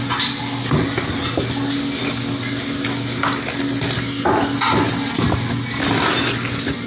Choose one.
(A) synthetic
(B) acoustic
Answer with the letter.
B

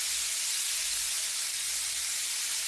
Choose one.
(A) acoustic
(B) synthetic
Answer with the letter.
A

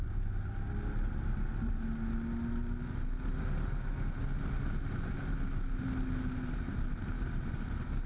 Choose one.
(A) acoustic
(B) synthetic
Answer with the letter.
A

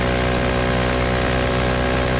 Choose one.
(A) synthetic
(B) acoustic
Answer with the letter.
B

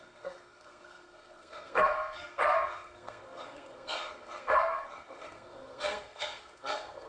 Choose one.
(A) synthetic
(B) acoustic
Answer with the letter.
A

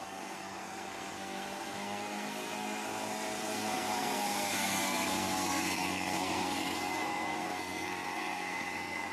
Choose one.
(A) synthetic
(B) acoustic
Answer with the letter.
A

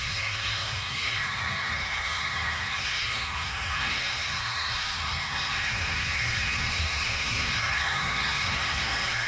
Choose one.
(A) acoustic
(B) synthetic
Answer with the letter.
B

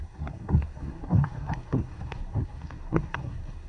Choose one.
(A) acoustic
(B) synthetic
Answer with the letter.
B